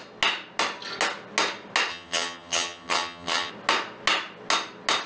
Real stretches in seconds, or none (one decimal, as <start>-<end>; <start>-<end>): 0.0-1.9; 3.5-5.1